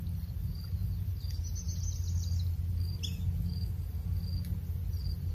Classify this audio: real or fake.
real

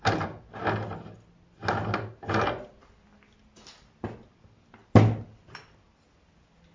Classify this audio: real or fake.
real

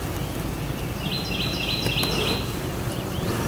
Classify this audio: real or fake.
real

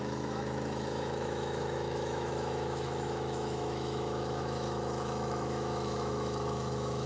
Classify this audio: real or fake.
fake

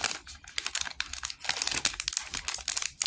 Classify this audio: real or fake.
real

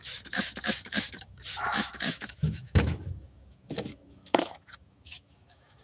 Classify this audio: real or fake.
fake